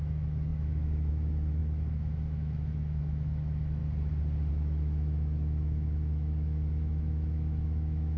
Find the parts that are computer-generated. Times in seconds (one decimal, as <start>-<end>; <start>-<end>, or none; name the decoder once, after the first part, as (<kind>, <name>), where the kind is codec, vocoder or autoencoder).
0.0-3.8 (autoencoder, DAC-VAE); 4.5-8.2